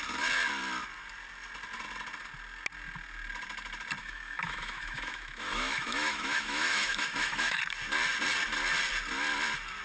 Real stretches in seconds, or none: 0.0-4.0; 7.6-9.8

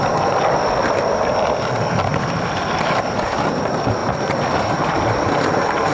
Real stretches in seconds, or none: 0.0-5.9